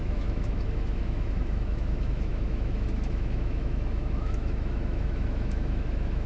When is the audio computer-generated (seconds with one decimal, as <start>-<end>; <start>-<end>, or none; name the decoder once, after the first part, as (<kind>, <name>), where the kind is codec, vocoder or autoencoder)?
0.0-6.3 (autoencoder, DAC-VAE)